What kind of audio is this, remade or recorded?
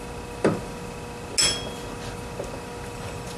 recorded